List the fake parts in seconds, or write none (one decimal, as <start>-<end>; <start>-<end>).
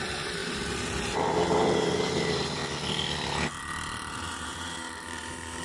0.0-2.6; 4.1-5.6